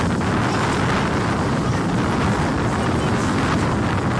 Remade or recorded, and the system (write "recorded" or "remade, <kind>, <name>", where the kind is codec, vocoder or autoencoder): recorded